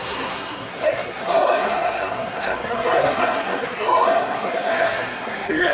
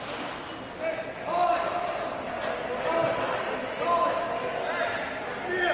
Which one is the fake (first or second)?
first